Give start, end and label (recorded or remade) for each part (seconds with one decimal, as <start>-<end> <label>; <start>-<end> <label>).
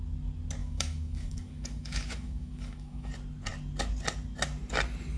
0.0-0.6 recorded; 0.6-3.1 remade; 3.1-5.2 recorded